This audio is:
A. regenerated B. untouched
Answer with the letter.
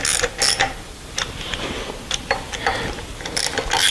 B